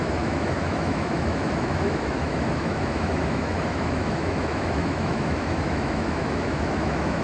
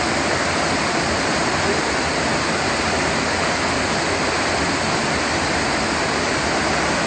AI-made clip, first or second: first